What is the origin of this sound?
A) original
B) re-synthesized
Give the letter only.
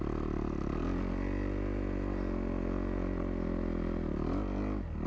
A